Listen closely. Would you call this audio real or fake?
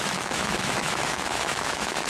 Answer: fake